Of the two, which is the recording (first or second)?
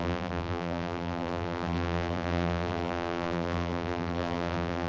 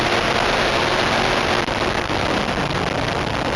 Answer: second